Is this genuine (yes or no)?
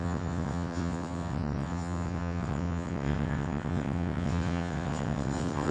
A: no